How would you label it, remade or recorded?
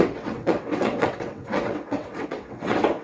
remade